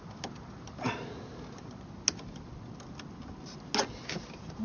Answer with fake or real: real